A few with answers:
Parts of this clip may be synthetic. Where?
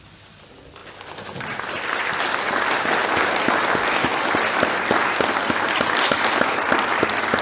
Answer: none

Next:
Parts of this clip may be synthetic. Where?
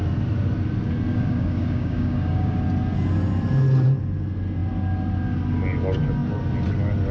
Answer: 1.1-2.6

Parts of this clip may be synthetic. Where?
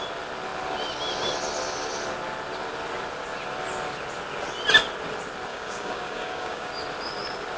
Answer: 5.5-6.7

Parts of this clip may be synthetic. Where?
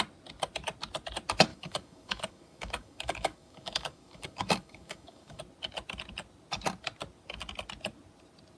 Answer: 1.5-5.4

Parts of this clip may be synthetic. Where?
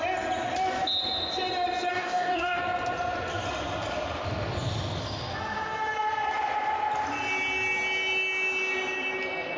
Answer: 1.9-2.6